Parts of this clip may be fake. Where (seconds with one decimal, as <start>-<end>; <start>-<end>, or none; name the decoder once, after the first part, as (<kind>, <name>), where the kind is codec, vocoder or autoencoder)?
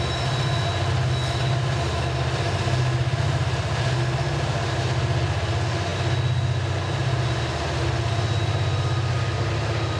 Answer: none